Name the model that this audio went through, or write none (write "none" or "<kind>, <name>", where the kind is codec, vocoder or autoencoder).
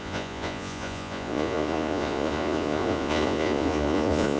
vocoder, Vocos